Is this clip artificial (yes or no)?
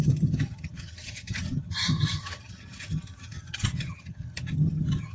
yes